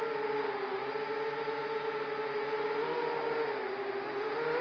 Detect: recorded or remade recorded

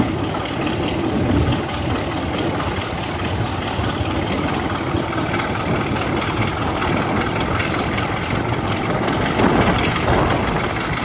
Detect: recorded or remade remade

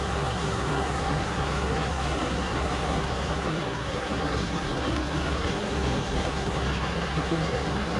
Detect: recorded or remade remade